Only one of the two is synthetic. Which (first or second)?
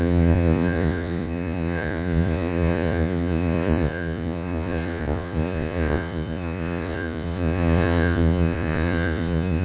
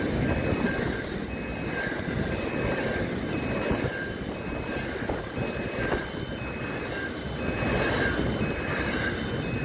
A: first